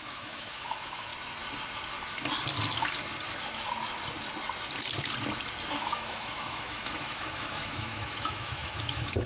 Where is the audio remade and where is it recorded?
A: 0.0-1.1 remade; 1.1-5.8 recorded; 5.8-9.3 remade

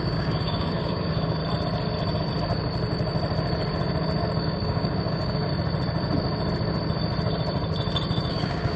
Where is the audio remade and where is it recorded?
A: 0.0-1.4 remade; 1.4-4.4 recorded; 4.4-5.5 remade; 5.5-8.3 recorded; 8.3-8.8 remade

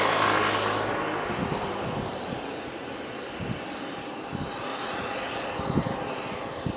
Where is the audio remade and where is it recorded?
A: 0.0-4.7 recorded; 4.7-5.5 remade; 5.5-6.8 recorded

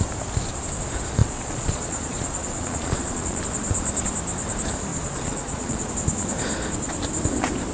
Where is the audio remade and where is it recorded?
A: 0.0-1.2 recorded; 1.2-3.4 remade; 3.4-4.9 recorded; 4.9-5.9 remade; 5.9-7.7 recorded

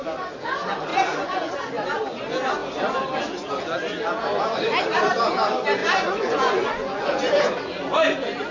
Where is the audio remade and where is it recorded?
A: 0.0-0.9 recorded; 0.9-1.5 remade; 1.5-5.8 recorded; 5.8-7.4 remade; 7.4-8.5 recorded

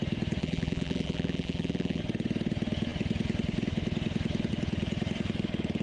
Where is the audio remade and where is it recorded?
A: 0.0-0.4 recorded; 0.4-2.0 remade; 2.0-5.8 recorded